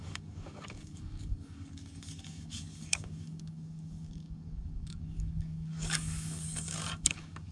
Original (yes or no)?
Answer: no